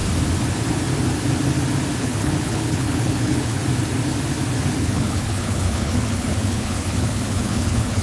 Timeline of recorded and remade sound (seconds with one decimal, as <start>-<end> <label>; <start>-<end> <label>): 0.0-2.0 recorded; 2.0-3.6 remade; 3.6-4.8 recorded; 4.8-8.0 remade